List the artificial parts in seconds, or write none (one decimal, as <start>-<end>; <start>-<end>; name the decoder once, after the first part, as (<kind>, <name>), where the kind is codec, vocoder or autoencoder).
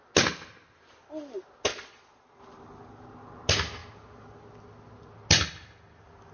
1.7-2.4 (vocoder, Vocos)